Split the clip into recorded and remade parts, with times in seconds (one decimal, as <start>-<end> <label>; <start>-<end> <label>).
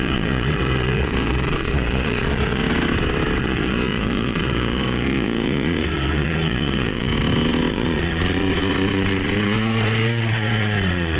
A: 0.0-2.6 remade; 2.6-3.4 recorded; 3.4-7.1 remade; 7.1-7.7 recorded; 7.7-11.2 remade